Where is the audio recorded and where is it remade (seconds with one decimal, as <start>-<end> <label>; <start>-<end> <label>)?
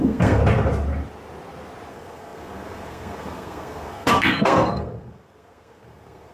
0.0-0.4 remade; 0.4-1.9 recorded; 1.9-6.3 remade